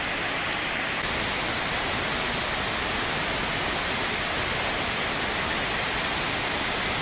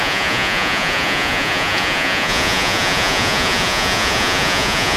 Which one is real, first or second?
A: first